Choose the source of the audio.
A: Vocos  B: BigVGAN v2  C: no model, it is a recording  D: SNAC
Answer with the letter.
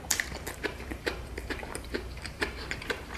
B